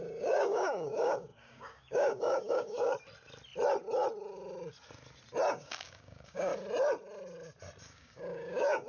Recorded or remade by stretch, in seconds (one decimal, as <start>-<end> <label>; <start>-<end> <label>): 0.0-2.9 remade; 2.9-5.5 recorded; 5.5-6.5 remade; 6.5-7.8 recorded; 7.8-8.9 remade